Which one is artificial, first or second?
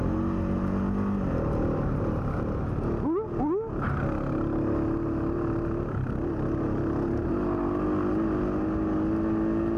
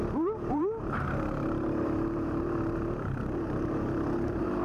second